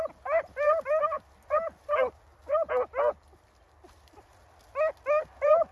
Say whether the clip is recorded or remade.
recorded